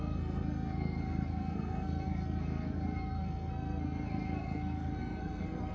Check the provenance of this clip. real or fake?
fake